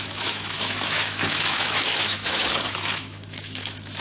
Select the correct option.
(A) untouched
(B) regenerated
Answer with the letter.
B